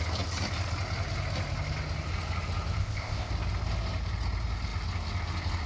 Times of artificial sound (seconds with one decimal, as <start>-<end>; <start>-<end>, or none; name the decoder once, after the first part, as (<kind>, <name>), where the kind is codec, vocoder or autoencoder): 2.8-3.3 (codec, ZipCodec)